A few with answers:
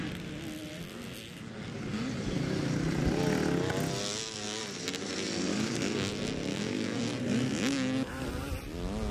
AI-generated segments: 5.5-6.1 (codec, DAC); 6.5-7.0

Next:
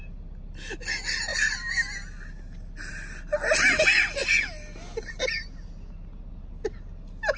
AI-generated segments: none

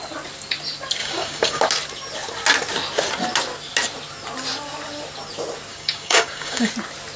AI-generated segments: 1.0-1.6 (codec, DAC); 5.7-6.7